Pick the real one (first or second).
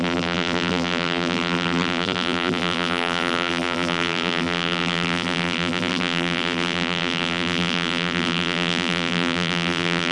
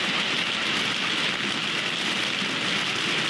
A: second